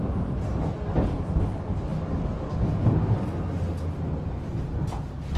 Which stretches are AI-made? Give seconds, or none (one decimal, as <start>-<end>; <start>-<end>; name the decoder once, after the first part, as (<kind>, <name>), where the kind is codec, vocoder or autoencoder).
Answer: none